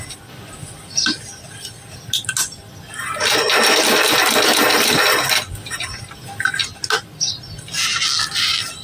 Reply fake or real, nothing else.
real